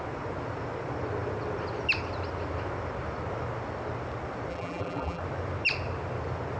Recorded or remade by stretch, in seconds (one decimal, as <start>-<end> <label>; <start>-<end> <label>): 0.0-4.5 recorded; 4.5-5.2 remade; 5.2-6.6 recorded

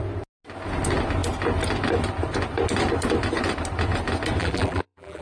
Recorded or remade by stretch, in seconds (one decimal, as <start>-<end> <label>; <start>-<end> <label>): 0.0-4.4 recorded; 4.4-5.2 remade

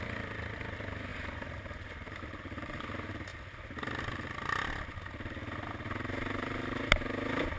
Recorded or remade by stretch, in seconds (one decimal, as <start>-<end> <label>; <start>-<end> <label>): 0.0-1.1 recorded; 1.1-2.8 remade; 2.8-7.6 recorded